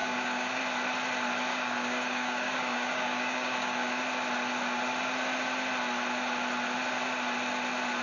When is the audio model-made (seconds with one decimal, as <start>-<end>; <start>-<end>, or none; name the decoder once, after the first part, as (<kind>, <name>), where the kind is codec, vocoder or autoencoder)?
0.0-0.6 (codec, DAC); 1.5-4.0

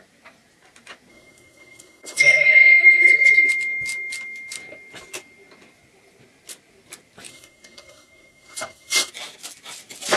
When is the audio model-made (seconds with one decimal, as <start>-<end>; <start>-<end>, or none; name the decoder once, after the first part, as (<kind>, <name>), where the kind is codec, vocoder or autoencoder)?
1.1-3.5 (codec, SNAC); 7.3-9.1

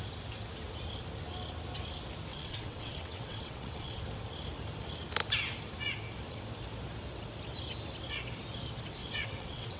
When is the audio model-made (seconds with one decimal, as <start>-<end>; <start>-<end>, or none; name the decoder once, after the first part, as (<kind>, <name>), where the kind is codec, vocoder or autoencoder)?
2.3-4.0 (vocoder, WaveNeXt); 9.0-9.8

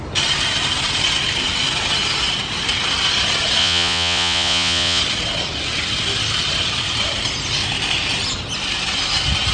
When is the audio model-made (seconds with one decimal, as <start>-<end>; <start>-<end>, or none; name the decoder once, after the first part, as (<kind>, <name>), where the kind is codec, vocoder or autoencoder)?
3.6-5.0 (vocoder, Vocos)

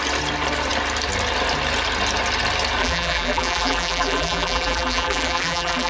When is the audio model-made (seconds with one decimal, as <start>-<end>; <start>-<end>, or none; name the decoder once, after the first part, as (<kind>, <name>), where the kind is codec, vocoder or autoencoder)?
2.8-5.9 (vocoder, BigVGAN v2)

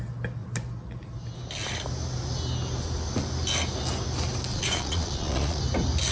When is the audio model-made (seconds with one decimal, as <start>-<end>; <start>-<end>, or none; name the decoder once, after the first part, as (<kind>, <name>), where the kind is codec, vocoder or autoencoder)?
4.5-5.6 (vocoder, Vocos)